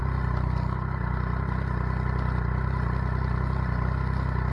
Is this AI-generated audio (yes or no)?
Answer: yes